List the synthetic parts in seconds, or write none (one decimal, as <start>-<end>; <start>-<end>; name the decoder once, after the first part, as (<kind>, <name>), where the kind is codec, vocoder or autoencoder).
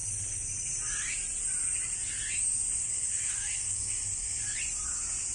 2.8-4.4 (codec, SNAC)